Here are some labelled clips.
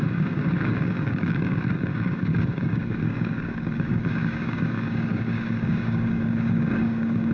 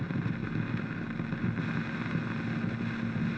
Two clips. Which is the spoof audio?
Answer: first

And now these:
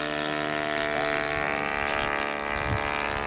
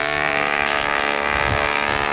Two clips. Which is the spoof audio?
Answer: second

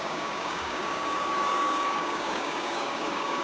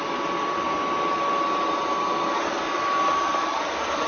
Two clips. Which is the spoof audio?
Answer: first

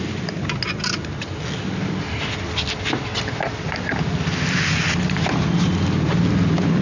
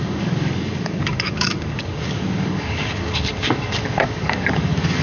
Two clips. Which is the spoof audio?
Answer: second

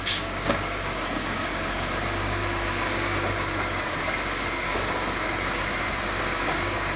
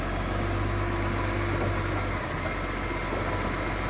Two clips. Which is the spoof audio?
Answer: first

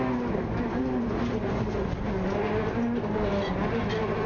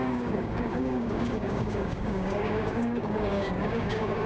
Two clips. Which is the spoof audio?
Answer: second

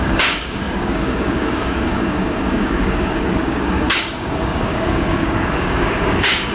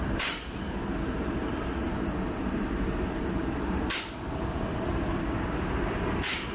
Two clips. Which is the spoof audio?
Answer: first